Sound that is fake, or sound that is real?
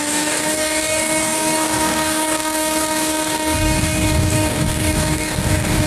fake